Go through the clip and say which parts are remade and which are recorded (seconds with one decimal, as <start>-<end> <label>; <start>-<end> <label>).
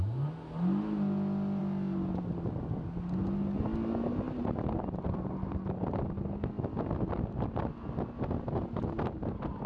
0.0-9.7 recorded